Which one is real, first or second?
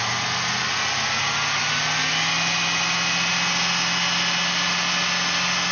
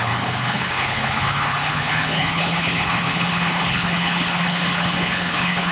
first